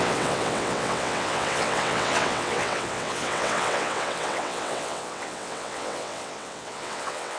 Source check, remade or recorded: remade